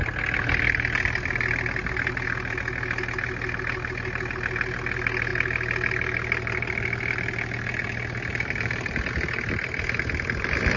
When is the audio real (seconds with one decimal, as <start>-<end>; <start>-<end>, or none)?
0.0-10.8